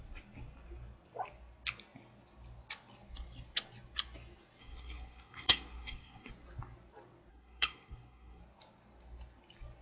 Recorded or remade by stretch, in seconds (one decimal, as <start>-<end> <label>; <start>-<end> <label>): 0.0-4.6 recorded; 4.6-6.3 remade; 6.3-7.3 recorded; 7.3-8.4 remade; 8.4-9.8 recorded